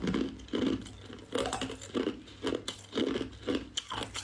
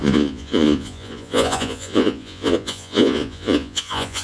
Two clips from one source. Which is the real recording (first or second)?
first